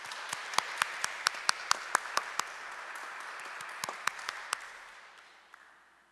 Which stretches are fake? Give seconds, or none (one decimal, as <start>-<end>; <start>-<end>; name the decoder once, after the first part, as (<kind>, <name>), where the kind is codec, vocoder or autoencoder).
none